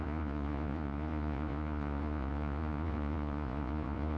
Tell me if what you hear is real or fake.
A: fake